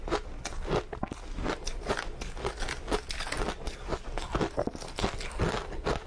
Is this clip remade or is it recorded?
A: recorded